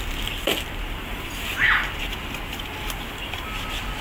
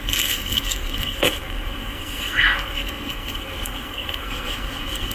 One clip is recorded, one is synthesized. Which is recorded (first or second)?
first